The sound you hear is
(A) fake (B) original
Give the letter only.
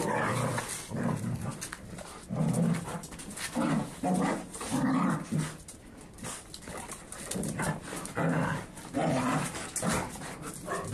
B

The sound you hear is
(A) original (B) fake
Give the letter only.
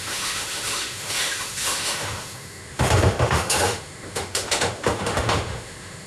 B